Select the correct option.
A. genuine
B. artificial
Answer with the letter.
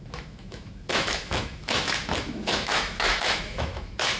B